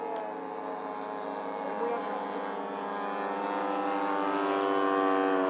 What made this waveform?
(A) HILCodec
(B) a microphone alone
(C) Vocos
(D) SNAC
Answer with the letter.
B